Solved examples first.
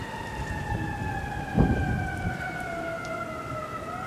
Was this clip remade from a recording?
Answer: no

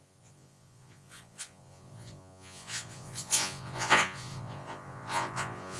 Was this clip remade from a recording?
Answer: yes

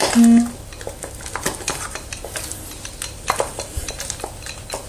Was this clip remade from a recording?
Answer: no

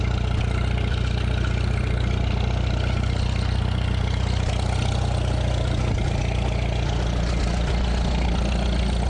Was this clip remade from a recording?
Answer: no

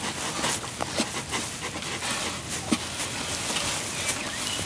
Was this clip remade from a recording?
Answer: no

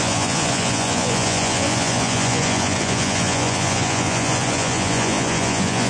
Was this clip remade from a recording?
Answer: yes